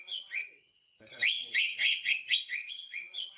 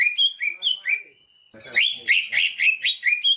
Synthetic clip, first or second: first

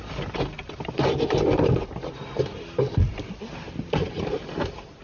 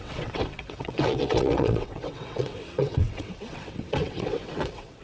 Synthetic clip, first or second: second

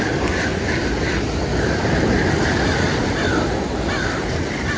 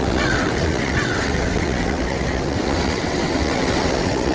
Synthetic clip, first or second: second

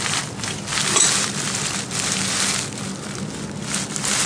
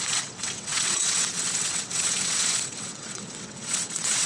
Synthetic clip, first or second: second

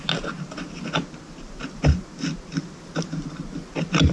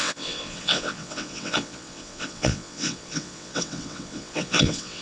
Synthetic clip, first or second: second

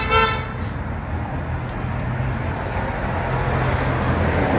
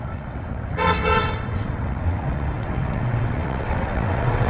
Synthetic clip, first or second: second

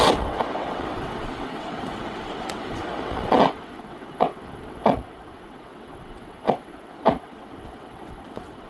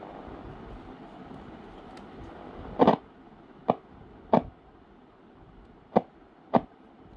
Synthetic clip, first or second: first